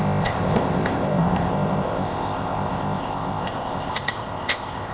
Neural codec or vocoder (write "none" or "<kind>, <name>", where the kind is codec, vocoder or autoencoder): codec, ZipCodec